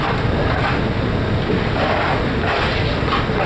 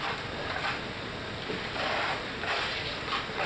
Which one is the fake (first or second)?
second